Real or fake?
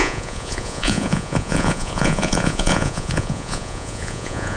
fake